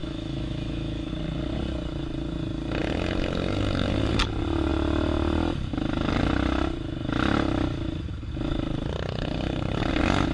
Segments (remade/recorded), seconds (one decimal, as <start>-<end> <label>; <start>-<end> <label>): 0.0-1.1 remade; 1.1-10.3 recorded